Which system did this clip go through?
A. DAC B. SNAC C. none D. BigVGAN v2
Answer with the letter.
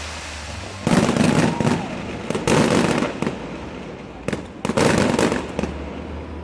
C